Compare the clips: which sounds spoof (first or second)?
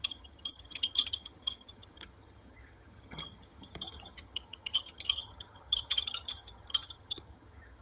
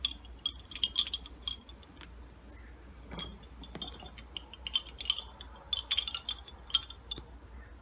first